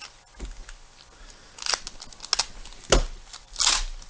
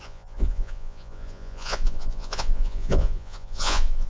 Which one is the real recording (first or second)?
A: first